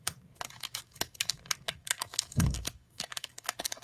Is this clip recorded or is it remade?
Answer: remade